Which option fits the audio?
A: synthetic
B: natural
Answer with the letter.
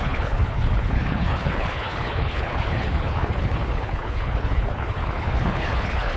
A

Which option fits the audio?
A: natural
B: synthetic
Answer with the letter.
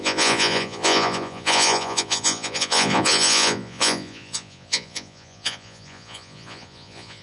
B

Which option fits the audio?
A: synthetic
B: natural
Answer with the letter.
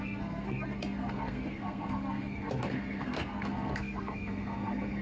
A